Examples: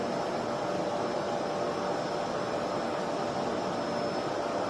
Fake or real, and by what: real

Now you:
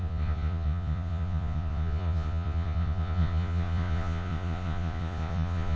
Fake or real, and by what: fake, vocoder, Vocos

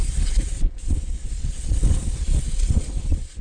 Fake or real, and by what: fake, vocoder, Vocos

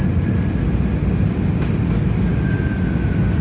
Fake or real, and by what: real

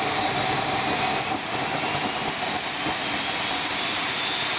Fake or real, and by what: real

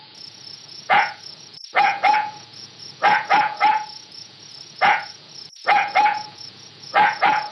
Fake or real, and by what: fake, vocoder, Vocos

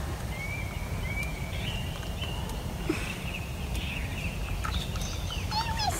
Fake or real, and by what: real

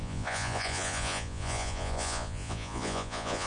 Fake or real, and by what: fake, vocoder, Vocos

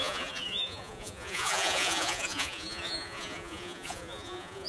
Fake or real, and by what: fake, vocoder, Vocos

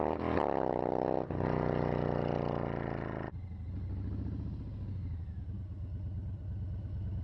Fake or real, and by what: real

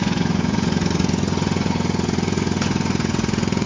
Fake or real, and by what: fake, vocoder, Vocos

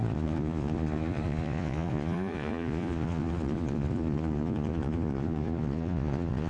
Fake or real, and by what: fake, vocoder, Vocos